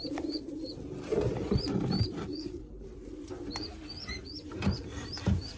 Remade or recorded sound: remade